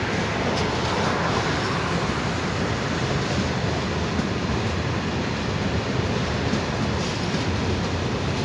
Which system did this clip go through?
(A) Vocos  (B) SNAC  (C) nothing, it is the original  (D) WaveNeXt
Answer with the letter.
C